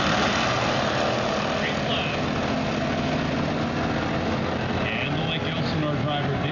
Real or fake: real